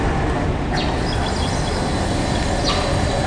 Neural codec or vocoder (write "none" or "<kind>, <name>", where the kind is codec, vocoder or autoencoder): none